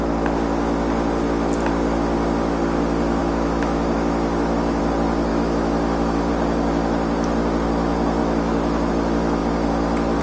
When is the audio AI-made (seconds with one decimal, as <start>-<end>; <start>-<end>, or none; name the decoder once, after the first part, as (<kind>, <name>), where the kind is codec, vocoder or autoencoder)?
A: 3.2-4.8 (autoencoder, DAC-VAE); 5.3-6.3